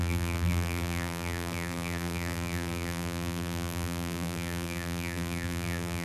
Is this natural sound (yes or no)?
no